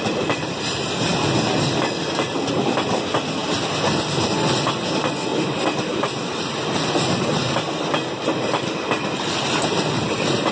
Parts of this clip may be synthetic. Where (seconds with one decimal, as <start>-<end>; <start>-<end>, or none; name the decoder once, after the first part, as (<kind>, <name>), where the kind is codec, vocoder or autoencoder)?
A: none